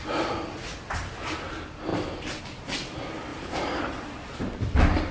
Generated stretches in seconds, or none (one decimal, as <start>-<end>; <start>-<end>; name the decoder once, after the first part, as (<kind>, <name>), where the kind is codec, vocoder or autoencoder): 3.3-4.5 (vocoder, BigVGAN v2)